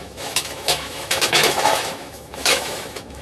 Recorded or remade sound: remade